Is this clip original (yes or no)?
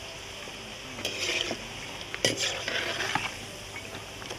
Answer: yes